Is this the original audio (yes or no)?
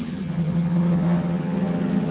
no